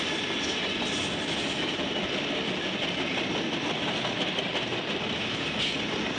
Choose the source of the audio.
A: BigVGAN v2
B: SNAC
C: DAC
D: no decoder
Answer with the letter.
D